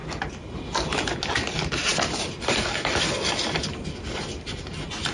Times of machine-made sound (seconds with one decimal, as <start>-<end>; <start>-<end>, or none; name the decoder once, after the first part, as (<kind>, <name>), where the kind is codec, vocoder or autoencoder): none